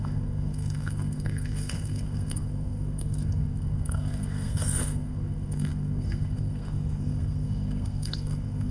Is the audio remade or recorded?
remade